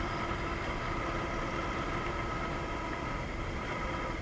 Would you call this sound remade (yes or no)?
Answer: no